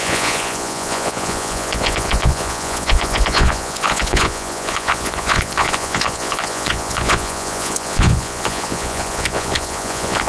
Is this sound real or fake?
fake